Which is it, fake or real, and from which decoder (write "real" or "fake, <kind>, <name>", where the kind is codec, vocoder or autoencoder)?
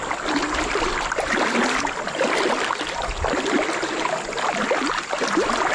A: real